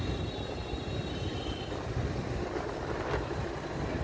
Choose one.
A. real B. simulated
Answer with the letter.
A